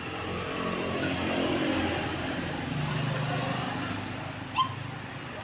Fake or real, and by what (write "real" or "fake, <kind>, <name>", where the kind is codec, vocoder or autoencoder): real